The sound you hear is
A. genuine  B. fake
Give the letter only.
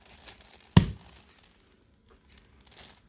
A